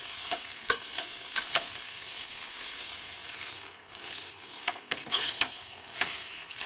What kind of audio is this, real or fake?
fake